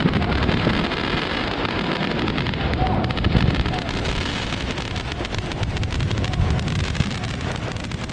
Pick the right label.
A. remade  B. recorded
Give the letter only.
B